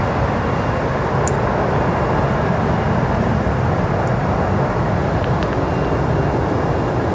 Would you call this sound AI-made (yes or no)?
no